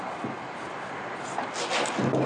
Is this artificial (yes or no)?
no